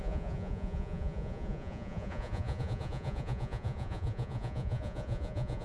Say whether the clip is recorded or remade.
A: remade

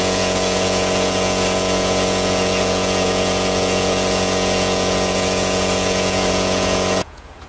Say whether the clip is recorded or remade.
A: remade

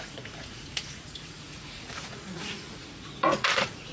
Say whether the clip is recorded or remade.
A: remade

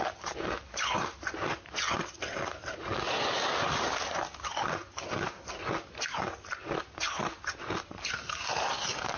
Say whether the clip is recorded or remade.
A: recorded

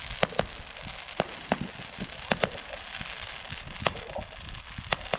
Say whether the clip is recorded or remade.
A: recorded